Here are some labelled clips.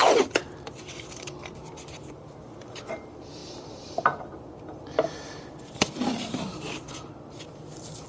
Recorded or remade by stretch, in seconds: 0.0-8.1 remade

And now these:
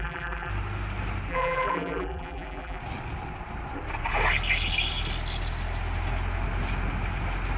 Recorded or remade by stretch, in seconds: 0.0-0.5 remade; 0.5-1.3 recorded; 1.3-2.8 remade; 2.8-7.6 recorded

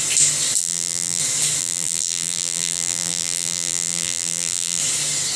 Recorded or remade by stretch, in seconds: 0.0-0.6 recorded; 0.6-1.2 remade; 1.2-1.6 recorded; 1.6-4.8 remade; 4.8-5.4 recorded

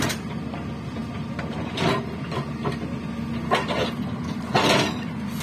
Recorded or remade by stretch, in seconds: 0.0-5.4 recorded

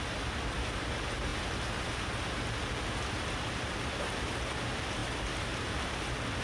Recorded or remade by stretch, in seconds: 0.0-6.4 recorded